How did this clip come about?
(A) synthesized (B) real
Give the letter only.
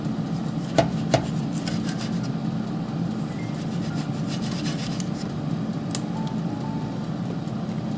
B